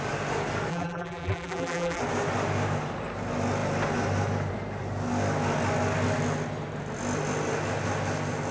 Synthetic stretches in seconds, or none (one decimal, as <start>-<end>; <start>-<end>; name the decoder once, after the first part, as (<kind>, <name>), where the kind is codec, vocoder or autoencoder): 0.7-2.0 (vocoder, BigVGAN v2)